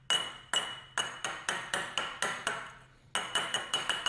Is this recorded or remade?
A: recorded